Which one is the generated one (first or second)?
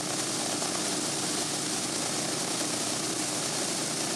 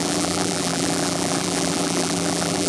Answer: second